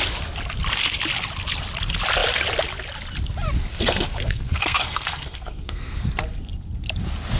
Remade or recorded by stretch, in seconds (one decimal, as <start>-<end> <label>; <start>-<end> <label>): 0.0-3.7 recorded; 3.7-6.1 remade; 6.1-7.4 recorded